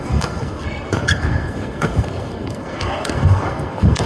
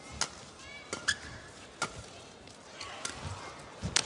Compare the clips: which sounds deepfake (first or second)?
first